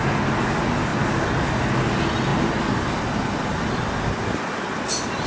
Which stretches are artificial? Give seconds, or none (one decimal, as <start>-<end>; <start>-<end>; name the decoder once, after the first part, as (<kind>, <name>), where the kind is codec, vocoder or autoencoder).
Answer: none